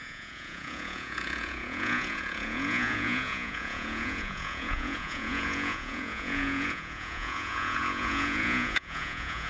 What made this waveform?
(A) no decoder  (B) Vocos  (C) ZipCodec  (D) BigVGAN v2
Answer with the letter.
B